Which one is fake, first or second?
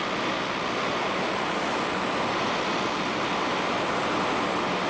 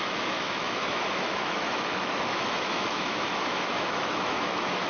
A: second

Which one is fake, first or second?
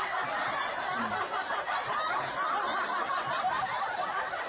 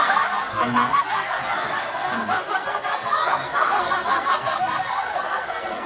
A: second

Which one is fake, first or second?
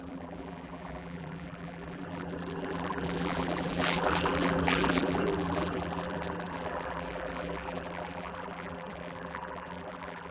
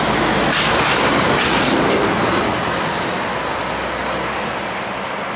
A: first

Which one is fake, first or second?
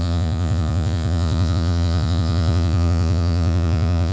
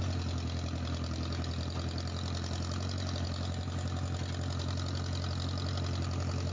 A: first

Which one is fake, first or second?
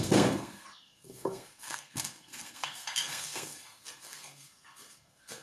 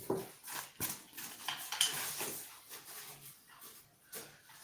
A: first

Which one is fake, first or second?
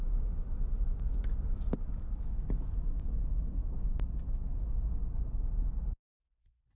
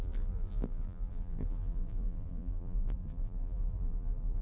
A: second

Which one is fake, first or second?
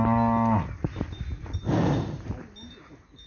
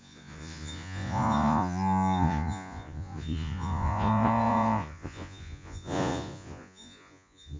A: second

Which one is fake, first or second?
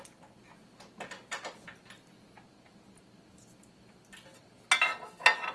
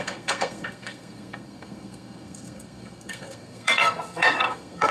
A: second